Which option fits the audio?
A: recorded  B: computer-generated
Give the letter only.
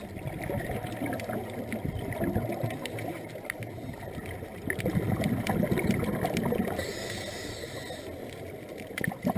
A